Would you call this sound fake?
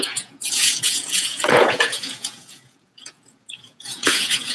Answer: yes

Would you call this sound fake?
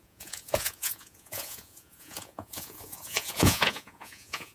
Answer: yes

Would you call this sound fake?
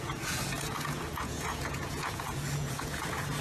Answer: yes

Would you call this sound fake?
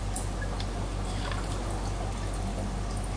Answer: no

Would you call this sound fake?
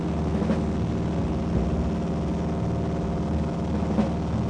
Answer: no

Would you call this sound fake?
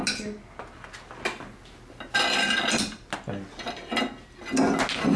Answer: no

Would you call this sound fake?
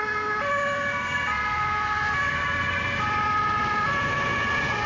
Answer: no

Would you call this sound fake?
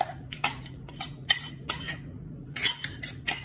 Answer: yes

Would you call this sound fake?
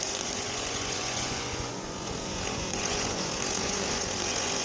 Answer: yes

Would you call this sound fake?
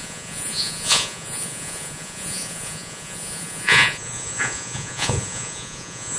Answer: yes